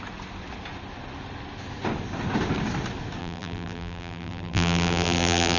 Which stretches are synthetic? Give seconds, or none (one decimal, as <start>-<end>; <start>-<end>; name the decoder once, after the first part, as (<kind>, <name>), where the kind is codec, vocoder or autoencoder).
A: 3.2-5.6 (vocoder, BigVGAN v2)